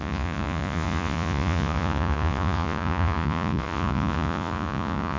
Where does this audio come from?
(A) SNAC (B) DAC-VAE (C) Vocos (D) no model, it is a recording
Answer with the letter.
C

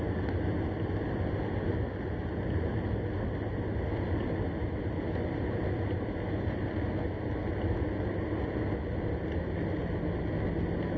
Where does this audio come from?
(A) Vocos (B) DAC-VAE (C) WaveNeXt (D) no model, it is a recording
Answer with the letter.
D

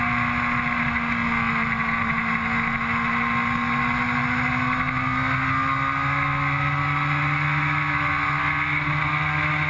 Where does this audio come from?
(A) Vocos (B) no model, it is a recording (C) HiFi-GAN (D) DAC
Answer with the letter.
B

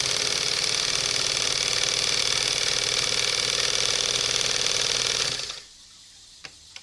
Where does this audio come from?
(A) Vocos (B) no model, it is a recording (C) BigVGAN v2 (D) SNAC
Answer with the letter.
B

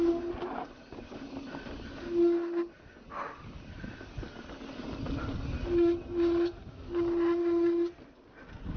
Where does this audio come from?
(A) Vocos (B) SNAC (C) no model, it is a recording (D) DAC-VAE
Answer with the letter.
C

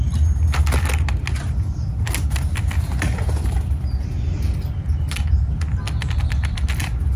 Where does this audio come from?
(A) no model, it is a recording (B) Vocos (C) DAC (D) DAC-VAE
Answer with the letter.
A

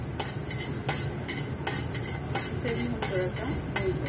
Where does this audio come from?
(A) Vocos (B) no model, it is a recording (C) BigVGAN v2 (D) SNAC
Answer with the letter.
B